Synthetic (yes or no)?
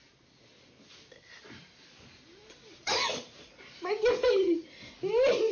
no